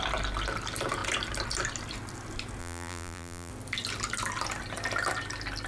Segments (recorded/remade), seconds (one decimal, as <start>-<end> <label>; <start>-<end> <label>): 0.0-2.6 recorded; 2.6-3.5 remade; 3.5-5.7 recorded